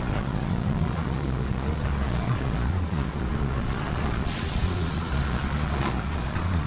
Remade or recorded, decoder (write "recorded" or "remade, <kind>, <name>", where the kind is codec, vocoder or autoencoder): remade, vocoder, Vocos